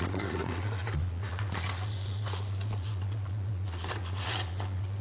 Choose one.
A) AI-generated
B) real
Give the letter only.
A